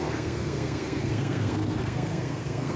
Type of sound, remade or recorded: remade